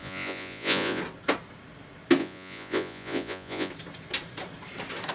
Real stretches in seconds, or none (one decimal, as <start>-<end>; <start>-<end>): 1.0-2.2; 3.7-5.1